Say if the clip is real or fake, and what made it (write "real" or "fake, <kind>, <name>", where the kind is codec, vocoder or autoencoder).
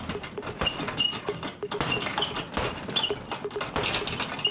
real